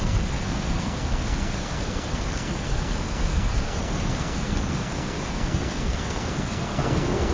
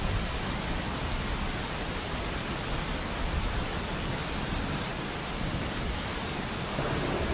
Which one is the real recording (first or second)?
second